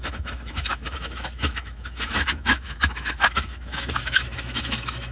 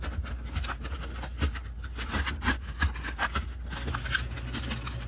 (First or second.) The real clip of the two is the second